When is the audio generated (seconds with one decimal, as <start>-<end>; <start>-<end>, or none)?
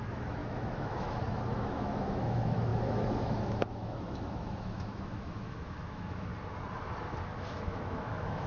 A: 0.0-6.3; 7.4-8.5